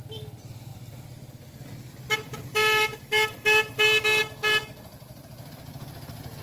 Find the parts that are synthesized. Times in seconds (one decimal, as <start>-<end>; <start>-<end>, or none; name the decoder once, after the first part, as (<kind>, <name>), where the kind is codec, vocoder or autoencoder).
2.5-4.2 (vocoder, BigVGAN v2)